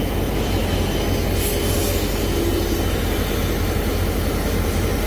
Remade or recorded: recorded